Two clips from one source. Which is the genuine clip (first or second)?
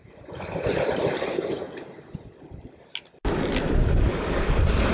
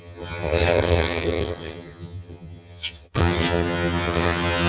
first